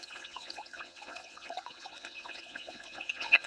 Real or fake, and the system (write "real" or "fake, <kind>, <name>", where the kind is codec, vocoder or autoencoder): fake, vocoder, Vocos